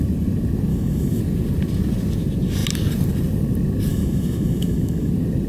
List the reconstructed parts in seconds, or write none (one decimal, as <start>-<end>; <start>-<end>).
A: 0.7-1.2; 3.9-5.1